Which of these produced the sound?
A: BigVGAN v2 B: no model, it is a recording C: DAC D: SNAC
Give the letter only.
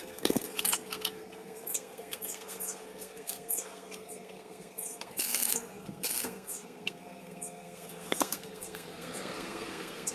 D